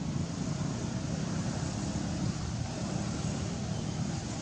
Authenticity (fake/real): fake